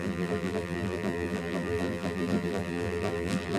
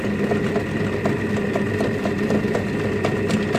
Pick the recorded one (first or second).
second